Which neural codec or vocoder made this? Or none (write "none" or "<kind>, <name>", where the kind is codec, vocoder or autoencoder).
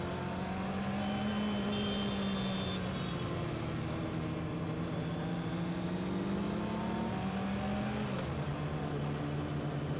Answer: none